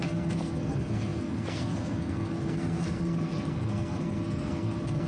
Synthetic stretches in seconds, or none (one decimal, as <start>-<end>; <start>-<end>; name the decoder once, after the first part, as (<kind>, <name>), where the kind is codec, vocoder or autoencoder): 0.0-5.1 (codec, SNAC)